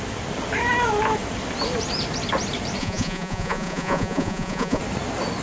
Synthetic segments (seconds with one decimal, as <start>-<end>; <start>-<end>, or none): 2.8-4.8